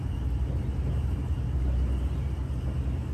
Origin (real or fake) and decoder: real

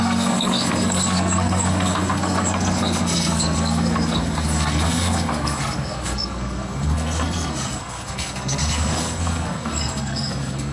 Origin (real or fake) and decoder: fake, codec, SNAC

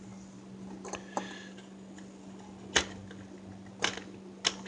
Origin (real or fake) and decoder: real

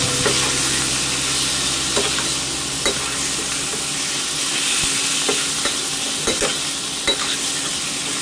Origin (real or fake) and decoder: real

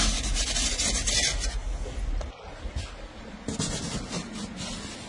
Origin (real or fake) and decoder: real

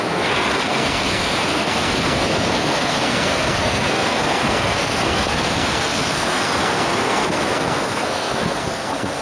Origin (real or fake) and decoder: fake, codec, SNAC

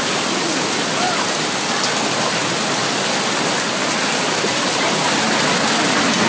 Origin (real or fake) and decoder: real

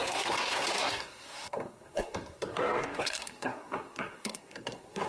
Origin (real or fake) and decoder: fake, codec, SNAC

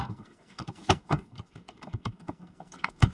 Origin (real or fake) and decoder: fake, codec, SNAC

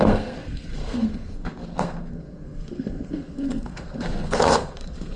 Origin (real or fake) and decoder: fake, codec, SNAC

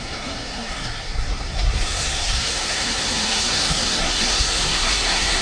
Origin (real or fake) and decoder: fake, codec, SNAC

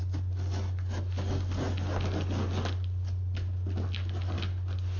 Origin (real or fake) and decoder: real